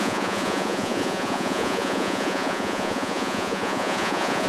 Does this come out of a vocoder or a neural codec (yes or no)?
yes